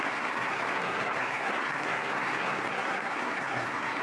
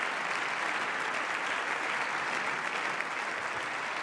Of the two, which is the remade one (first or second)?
first